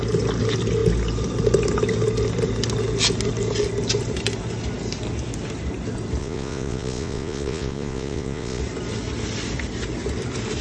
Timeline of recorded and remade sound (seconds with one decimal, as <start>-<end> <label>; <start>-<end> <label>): 0.0-6.2 recorded; 6.2-8.6 remade; 8.6-10.6 recorded